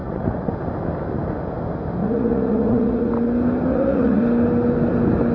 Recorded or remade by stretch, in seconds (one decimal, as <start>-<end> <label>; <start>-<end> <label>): 0.0-0.5 remade; 0.5-2.0 recorded; 2.0-3.1 remade; 3.1-3.7 recorded; 3.7-4.2 remade; 4.2-5.3 recorded